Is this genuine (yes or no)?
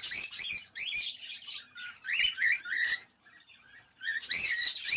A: no